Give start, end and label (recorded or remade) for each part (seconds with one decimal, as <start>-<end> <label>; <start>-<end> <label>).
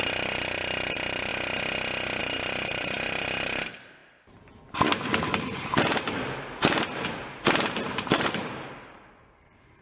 0.0-1.3 remade; 1.3-2.2 recorded; 2.2-4.0 remade; 4.0-8.0 recorded; 8.0-9.8 remade